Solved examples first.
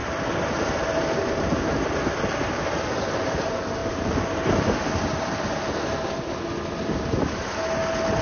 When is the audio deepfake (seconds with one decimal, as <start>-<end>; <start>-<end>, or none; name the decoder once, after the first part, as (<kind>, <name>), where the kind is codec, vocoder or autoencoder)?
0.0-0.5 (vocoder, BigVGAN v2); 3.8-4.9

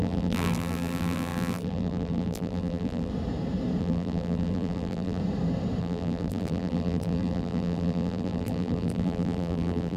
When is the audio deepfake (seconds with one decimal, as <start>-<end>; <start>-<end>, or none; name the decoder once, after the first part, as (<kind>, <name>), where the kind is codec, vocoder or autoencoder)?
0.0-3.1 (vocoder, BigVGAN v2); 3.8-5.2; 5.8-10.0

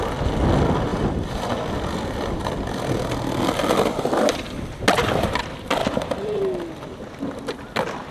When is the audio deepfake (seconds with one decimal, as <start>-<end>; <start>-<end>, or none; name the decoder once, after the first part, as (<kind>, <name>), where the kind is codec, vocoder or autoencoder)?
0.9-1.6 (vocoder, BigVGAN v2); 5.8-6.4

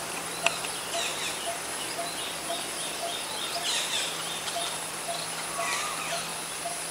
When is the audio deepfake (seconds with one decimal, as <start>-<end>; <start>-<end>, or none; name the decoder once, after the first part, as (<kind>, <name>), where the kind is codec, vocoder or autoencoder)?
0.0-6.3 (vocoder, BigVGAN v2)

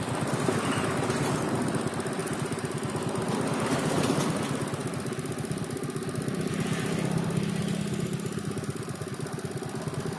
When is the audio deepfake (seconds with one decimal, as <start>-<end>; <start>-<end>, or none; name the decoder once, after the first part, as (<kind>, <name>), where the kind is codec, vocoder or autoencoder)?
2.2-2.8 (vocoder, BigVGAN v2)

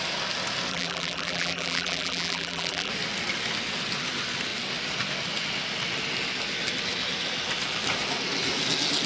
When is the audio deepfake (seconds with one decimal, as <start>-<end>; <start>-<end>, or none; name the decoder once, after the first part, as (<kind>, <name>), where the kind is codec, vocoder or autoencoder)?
0.7-2.9 (vocoder, BigVGAN v2)